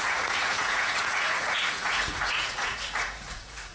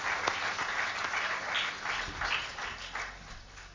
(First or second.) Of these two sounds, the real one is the second